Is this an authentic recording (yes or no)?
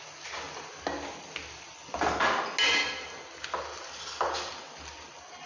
yes